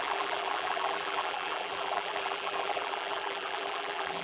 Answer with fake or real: fake